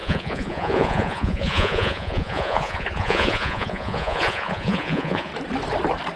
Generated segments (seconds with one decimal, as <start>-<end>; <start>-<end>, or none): 0.0-5.3